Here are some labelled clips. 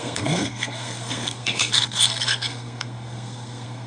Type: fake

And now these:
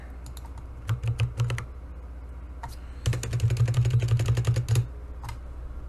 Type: real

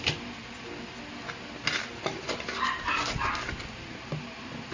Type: real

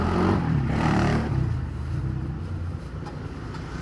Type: fake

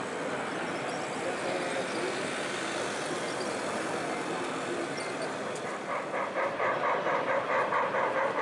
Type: real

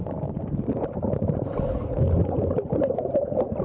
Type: real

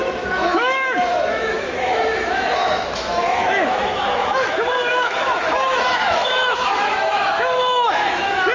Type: fake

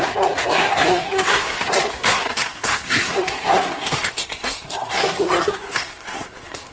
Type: fake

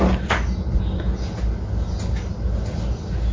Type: real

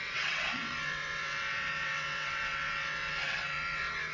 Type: fake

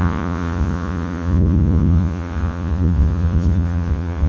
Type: fake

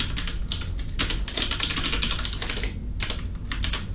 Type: real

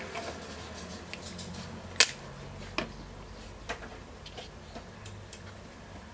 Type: real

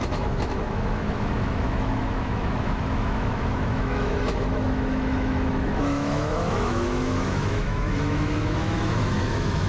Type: fake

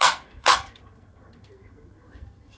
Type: fake